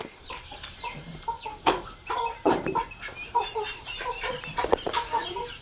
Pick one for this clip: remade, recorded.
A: remade